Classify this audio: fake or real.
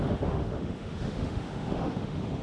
fake